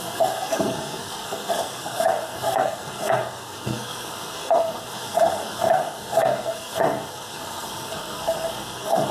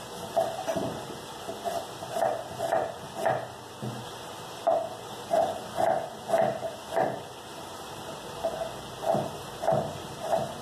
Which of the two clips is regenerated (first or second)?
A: first